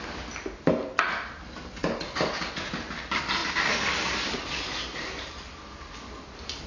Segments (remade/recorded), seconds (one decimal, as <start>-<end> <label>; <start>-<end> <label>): 0.0-6.7 recorded